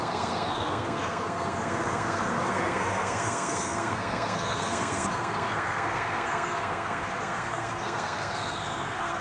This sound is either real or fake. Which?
fake